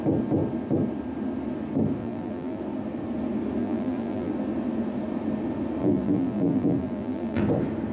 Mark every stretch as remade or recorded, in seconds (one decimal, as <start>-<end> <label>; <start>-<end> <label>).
0.0-2.0 recorded; 2.0-2.6 remade; 2.6-3.6 recorded; 3.6-4.3 remade; 4.3-5.8 recorded; 5.8-7.4 remade; 7.4-7.9 recorded